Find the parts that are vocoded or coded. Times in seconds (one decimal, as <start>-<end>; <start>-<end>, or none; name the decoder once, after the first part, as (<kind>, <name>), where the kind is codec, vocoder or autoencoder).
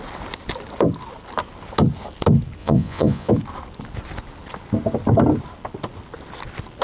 2.6-3.3 (vocoder, Vocos)